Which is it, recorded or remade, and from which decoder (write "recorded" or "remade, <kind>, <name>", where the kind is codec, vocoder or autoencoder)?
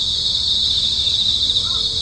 recorded